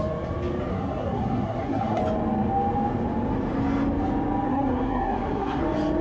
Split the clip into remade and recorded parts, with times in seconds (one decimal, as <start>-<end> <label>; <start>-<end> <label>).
0.0-0.7 recorded; 0.7-2.0 remade; 2.0-4.5 recorded; 4.5-5.6 remade; 5.6-6.0 recorded